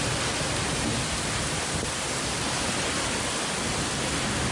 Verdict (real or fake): real